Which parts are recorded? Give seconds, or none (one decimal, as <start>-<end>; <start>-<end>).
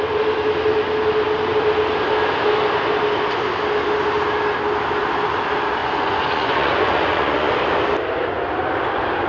0.0-5.8; 7.5-9.3